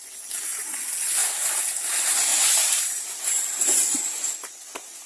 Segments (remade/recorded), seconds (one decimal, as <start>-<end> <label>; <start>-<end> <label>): 0.0-2.3 recorded; 2.3-2.8 remade; 2.8-5.1 recorded